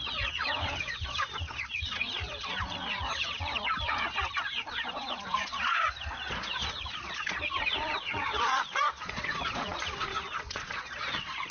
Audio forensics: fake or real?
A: fake